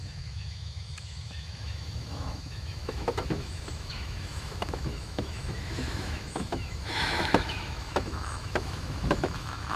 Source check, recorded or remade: remade